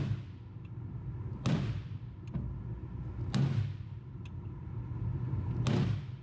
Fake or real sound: real